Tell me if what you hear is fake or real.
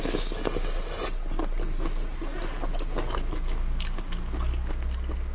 real